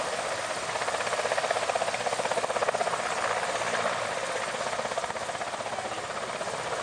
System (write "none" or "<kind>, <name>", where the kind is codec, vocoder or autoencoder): none